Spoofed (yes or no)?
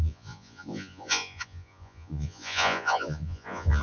yes